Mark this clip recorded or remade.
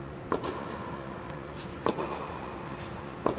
remade